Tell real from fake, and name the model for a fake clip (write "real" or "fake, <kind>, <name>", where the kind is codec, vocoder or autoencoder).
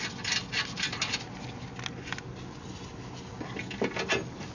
real